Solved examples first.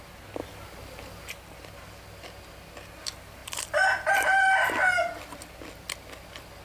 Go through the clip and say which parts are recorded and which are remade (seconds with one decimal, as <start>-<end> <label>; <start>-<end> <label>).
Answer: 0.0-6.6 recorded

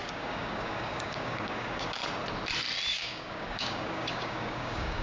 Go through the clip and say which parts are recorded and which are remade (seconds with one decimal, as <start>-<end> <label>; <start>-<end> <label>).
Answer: 0.0-2.0 remade; 2.0-2.9 recorded; 2.9-5.0 remade

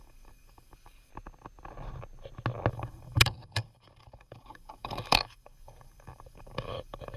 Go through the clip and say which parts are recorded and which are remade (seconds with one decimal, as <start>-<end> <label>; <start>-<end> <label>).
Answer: 0.0-1.1 remade; 1.1-2.7 recorded; 2.7-7.2 remade

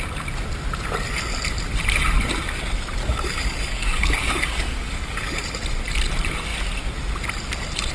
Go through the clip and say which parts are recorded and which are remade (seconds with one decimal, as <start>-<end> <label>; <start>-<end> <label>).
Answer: 0.0-3.0 recorded; 3.0-5.4 remade; 5.4-7.9 recorded